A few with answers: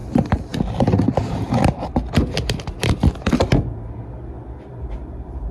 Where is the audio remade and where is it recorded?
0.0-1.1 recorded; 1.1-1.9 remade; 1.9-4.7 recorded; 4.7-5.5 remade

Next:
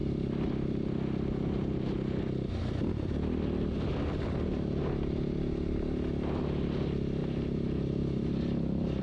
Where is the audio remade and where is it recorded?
0.0-7.2 recorded; 7.2-8.3 remade; 8.3-9.0 recorded

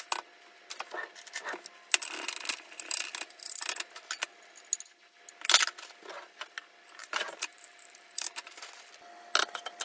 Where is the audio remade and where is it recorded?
0.0-7.0 recorded; 7.0-8.6 remade; 8.6-9.8 recorded